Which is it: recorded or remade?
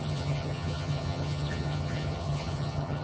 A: remade